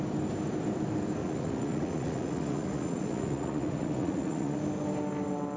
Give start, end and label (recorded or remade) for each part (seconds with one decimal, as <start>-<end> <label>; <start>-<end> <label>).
0.0-1.2 recorded; 1.2-4.6 remade; 4.6-5.6 recorded